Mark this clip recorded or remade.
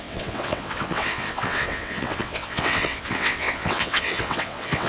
remade